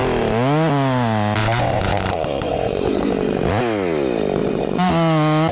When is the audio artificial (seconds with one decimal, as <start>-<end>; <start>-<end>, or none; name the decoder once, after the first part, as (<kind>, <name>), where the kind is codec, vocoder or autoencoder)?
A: 1.4-3.4 (vocoder, Vocos); 4.4-4.9